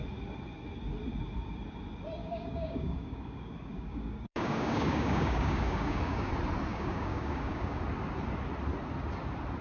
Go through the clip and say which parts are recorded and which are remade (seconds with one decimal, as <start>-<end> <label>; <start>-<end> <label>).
0.0-2.2 recorded; 2.2-6.3 remade; 6.3-6.7 recorded; 6.7-7.8 remade; 7.8-9.6 recorded